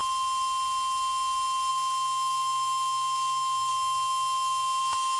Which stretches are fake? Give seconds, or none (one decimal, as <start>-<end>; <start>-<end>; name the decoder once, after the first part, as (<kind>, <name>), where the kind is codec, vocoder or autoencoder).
1.7-5.2 (autoencoder, DAC-VAE)